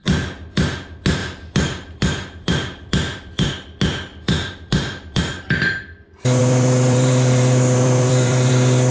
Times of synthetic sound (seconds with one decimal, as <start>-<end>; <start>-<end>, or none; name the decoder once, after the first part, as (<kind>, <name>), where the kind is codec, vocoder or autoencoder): 1.2-3.5 (vocoder, BigVGAN v2); 4.1-5.2; 6.4-8.5